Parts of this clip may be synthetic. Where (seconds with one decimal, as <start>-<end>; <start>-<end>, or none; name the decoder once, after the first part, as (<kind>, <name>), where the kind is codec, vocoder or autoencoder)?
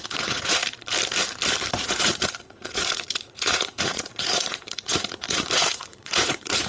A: 0.0-0.6 (vocoder, Vocos); 1.7-6.7